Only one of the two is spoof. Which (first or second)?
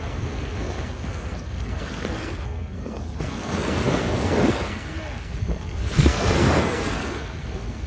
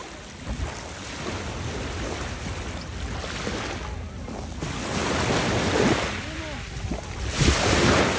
first